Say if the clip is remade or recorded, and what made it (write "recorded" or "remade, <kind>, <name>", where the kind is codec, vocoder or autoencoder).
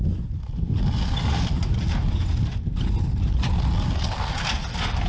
recorded